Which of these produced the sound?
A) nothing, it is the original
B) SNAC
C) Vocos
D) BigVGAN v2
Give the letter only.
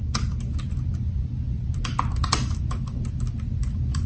A